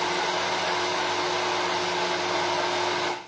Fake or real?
real